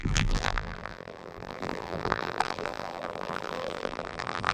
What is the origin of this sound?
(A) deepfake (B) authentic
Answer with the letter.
A